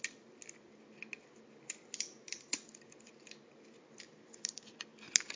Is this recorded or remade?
recorded